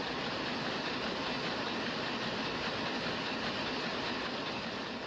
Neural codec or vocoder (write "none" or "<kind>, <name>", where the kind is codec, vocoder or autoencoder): none